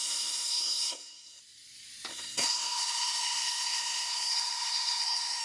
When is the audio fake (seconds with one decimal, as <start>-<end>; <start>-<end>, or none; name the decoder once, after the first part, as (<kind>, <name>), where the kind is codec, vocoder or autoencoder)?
0.0-1.4 (codec, SNAC); 2.1-5.4